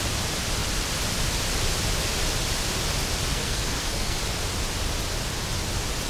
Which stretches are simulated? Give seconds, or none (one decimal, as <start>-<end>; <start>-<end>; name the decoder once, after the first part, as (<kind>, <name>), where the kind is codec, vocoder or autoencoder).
3.3-4.2 (codec, SNAC)